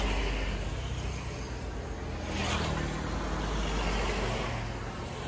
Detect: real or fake real